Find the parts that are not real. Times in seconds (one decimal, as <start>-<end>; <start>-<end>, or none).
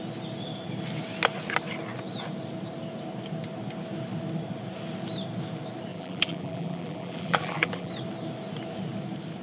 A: 5.9-7.9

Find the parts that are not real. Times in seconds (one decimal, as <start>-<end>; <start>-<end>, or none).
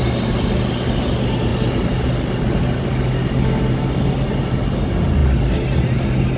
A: none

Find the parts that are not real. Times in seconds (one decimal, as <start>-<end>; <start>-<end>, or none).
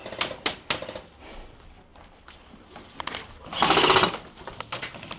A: 1.9-5.2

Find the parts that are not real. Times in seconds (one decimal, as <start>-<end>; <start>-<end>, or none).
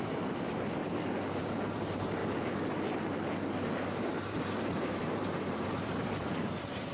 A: 0.0-0.8; 1.4-2.2; 4.0-6.9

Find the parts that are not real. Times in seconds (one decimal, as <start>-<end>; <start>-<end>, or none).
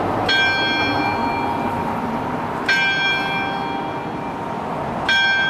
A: none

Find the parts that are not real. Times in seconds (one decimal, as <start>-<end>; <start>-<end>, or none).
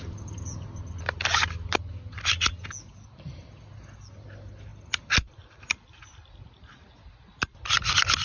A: none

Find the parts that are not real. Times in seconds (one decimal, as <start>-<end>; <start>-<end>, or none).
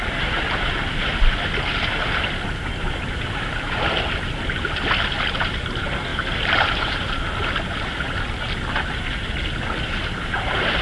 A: 6.1-7.2